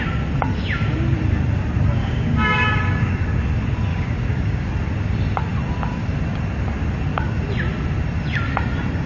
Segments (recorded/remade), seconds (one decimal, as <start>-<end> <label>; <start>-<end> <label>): 0.0-2.0 recorded; 2.0-3.4 remade; 3.4-3.9 recorded; 3.9-4.7 remade; 4.7-9.1 recorded